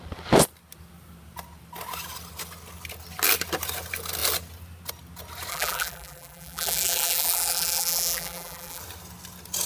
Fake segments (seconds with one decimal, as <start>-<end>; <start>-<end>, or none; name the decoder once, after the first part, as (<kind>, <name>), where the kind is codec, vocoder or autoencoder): 5.5-8.8 (vocoder, BigVGAN v2)